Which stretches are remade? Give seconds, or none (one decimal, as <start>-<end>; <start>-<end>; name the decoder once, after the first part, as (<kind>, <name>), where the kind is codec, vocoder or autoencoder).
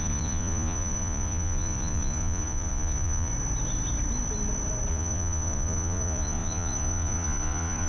0.0-3.3 (vocoder, Vocos); 4.9-7.9